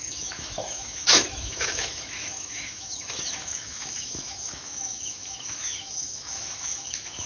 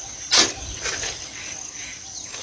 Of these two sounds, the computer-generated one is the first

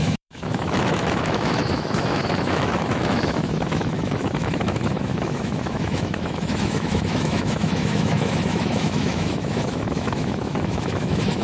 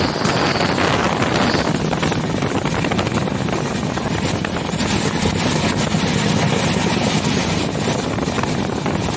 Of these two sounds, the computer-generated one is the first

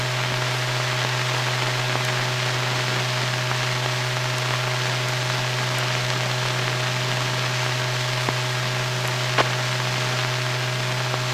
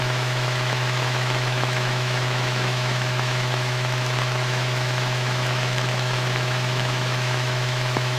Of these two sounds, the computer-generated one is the second